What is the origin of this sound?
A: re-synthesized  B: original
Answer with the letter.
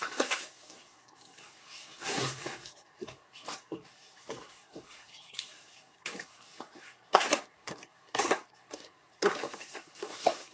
A